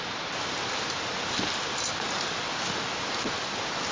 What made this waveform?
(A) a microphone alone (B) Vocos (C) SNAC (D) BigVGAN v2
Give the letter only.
A